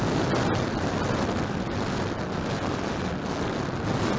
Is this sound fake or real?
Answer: real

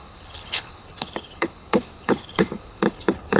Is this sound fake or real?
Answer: fake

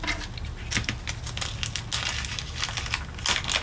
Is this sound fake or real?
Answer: real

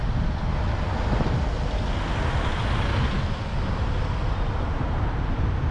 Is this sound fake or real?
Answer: real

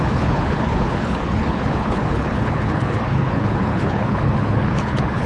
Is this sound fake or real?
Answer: fake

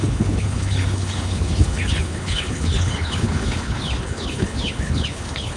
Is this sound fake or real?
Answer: fake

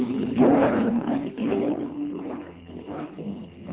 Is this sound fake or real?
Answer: fake